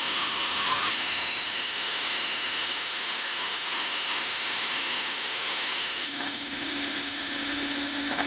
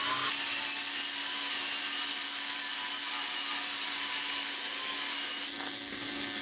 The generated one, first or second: first